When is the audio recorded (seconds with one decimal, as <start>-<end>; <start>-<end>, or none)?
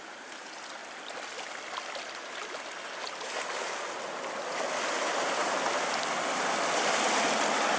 0.0-7.8